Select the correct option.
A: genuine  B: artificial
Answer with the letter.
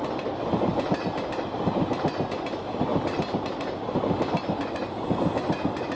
A